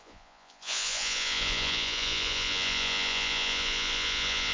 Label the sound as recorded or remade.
remade